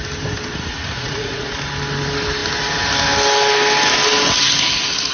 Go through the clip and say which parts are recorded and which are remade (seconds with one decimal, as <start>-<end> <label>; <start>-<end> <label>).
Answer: 0.0-0.7 recorded; 0.7-1.5 remade; 1.5-5.1 recorded